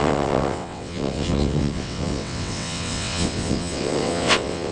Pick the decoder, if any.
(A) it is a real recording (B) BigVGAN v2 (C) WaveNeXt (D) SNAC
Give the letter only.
C